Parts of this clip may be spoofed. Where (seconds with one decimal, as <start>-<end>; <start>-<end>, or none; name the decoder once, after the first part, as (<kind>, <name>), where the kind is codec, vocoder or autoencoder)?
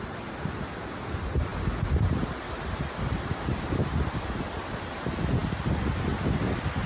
none